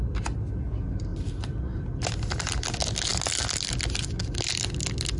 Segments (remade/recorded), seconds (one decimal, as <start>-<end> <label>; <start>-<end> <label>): 0.0-5.2 recorded